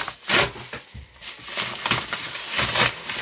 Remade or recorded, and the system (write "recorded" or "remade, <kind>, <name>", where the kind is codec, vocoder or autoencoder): recorded